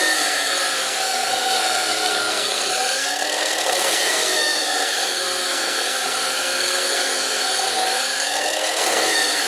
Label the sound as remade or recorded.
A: remade